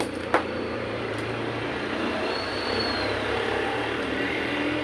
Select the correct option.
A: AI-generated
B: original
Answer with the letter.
A